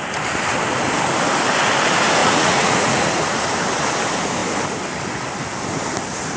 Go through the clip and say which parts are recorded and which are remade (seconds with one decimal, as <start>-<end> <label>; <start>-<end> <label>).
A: 0.0-2.2 recorded; 2.2-3.4 remade; 3.4-6.4 recorded